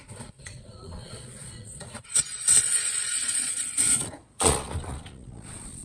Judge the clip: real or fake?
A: fake